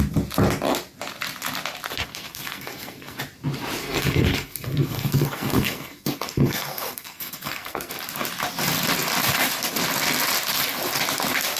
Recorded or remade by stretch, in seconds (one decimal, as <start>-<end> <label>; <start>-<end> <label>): 0.0-2.1 recorded; 2.1-3.2 remade; 3.2-3.8 recorded; 3.8-7.9 remade; 7.9-11.6 recorded